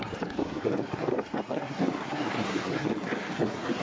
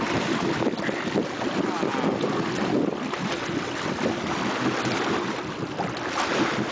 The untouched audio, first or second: second